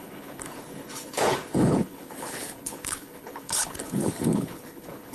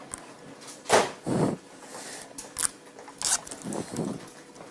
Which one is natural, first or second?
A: second